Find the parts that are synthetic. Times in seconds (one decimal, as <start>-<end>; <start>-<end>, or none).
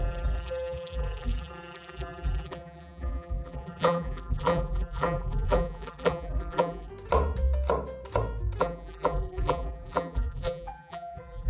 0.0-6.9; 8.6-11.5